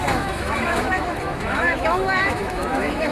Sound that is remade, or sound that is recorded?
remade